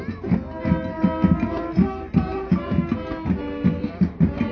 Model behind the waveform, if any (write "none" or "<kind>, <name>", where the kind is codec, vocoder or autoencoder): none